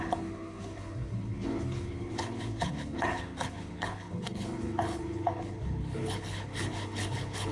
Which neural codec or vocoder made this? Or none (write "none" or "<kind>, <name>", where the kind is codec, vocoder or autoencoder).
codec, HILCodec